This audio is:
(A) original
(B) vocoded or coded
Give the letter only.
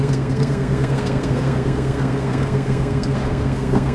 B